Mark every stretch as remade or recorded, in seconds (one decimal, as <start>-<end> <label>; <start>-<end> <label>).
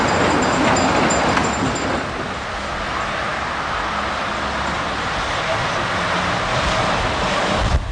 0.0-7.9 recorded